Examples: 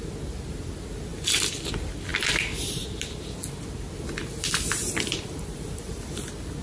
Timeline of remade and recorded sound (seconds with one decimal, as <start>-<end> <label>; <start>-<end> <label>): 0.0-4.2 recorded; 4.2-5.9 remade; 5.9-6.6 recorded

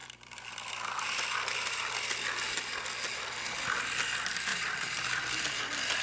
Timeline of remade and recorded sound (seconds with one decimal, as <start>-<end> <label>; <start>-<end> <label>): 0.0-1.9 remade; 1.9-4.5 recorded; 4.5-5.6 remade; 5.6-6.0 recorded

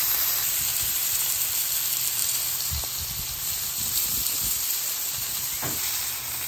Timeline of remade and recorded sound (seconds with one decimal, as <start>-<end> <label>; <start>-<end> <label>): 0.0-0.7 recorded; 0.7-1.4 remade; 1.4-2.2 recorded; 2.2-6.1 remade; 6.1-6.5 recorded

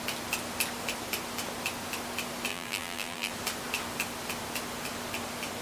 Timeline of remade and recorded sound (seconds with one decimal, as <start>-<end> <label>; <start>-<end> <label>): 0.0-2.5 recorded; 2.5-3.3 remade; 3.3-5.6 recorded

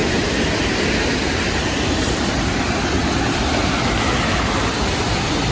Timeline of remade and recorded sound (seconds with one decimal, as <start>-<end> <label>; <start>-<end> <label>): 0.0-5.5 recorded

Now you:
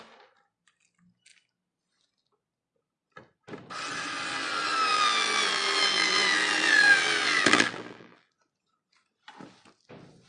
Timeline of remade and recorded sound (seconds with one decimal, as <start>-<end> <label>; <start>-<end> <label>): 0.0-4.9 recorded; 4.9-8.3 remade; 8.3-10.3 recorded

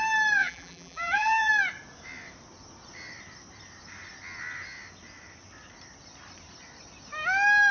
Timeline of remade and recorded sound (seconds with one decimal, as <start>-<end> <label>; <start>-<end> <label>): 0.0-0.4 recorded; 0.4-1.5 remade; 1.5-7.7 recorded

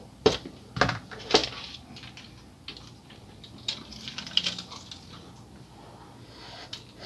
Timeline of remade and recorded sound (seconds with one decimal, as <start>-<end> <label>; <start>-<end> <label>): 0.0-0.8 remade; 0.8-7.1 recorded